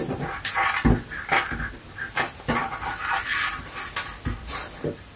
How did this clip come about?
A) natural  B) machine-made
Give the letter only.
A